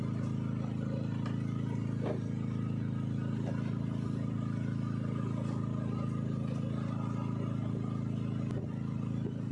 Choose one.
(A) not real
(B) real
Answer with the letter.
B